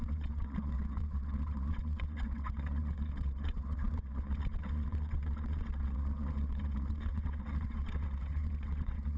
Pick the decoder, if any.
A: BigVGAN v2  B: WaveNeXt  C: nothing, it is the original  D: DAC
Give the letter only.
B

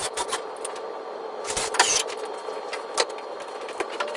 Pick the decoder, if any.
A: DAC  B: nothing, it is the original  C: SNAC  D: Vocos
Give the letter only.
B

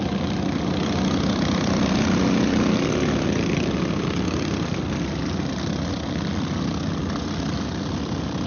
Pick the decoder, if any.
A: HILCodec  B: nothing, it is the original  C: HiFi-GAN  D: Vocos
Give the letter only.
B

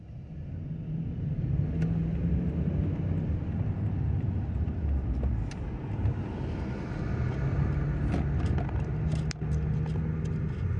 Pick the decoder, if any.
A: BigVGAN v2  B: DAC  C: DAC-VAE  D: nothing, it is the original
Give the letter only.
D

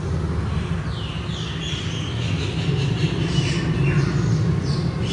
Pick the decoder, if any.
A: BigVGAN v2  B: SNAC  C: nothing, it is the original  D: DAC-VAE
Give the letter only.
C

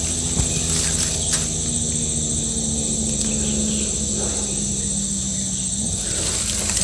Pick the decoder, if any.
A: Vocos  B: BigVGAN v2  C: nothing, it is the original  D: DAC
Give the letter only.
C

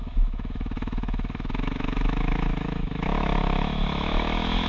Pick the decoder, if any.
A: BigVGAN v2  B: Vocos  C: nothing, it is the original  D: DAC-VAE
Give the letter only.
D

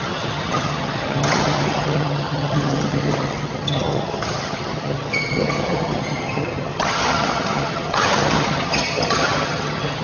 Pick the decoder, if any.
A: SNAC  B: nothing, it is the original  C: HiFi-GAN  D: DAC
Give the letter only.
C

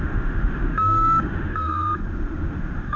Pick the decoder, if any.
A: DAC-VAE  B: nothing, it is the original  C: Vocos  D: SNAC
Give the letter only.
A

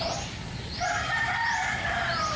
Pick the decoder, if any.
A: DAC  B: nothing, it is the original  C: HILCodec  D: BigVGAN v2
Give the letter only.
D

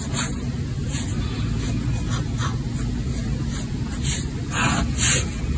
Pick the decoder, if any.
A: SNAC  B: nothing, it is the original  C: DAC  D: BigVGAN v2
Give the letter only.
B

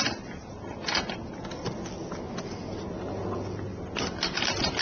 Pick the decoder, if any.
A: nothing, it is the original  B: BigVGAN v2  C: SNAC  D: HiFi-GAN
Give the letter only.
A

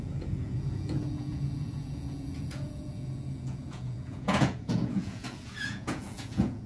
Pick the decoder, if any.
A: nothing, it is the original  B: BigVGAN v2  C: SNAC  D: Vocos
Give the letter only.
D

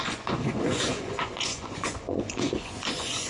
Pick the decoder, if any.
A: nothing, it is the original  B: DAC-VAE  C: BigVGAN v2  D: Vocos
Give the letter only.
D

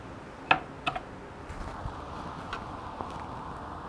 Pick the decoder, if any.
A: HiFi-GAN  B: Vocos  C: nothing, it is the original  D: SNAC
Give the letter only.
C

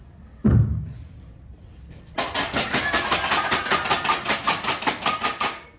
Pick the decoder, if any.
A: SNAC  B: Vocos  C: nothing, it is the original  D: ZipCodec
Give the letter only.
C